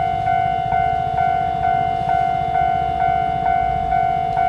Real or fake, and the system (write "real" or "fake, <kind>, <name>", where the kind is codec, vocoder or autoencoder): real